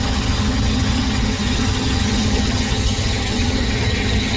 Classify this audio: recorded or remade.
remade